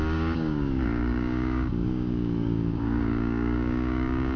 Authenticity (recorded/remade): remade